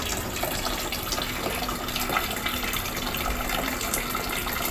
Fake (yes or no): no